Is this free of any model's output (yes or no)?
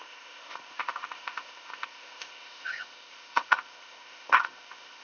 no